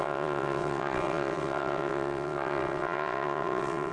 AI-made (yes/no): yes